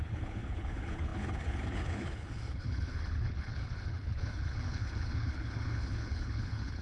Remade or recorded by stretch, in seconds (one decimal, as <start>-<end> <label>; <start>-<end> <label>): 0.0-6.8 remade